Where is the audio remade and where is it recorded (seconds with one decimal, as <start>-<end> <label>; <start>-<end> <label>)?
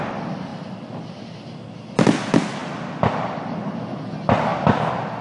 0.0-5.2 recorded